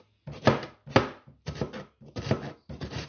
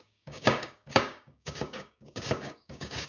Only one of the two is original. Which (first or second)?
first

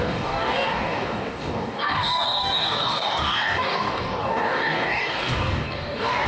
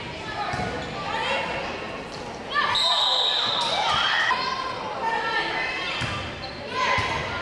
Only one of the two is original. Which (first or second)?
second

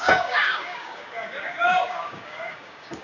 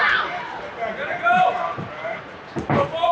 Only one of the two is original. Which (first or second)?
second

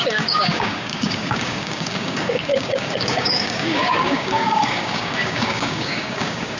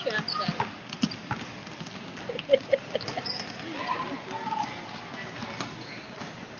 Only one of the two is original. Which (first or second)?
second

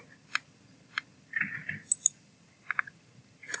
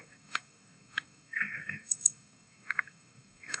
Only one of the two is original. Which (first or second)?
first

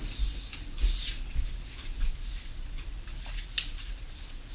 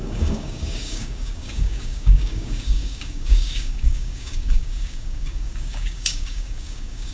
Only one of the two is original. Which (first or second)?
first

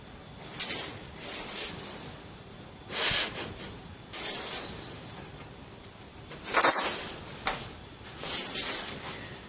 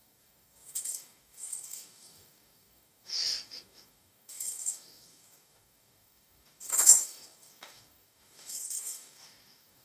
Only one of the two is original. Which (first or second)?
first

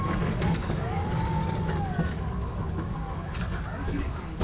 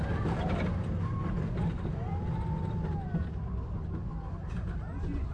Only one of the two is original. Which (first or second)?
second